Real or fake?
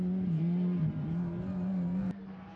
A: real